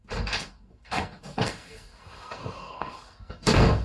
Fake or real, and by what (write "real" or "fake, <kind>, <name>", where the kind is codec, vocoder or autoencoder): fake, codec, SNAC